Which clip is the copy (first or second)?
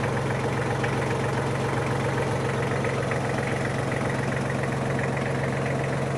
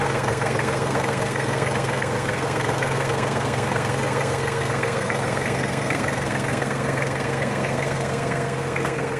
second